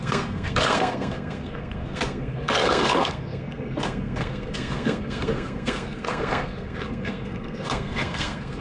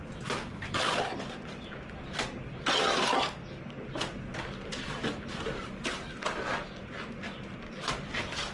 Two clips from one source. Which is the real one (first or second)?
second